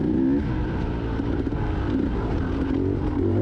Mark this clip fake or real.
real